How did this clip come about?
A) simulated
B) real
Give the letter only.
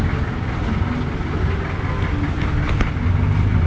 B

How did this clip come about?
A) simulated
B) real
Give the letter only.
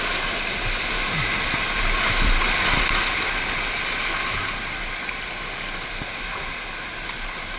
B